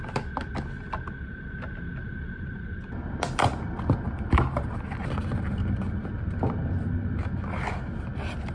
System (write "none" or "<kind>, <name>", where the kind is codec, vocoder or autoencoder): none